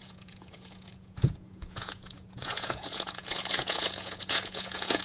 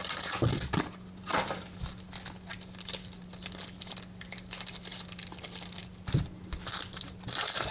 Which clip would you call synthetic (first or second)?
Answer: first